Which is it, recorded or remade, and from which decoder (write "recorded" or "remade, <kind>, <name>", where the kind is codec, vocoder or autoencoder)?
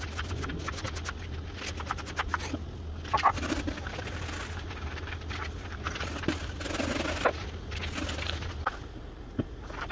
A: recorded